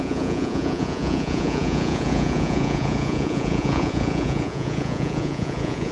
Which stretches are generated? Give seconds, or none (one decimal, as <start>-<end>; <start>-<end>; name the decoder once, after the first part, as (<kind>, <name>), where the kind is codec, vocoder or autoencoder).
0.0-5.9 (vocoder, Vocos)

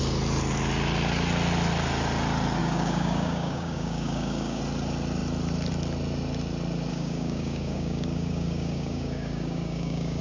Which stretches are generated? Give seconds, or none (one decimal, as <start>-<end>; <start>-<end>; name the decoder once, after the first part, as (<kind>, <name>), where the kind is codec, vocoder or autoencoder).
2.6-4.6 (codec, DAC); 6.9-10.2

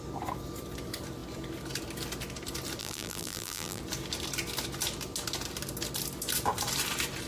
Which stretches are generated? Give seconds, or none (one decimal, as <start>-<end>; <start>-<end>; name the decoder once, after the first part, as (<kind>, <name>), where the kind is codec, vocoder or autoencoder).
2.8-3.8 (vocoder, BigVGAN v2)